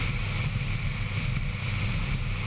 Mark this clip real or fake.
real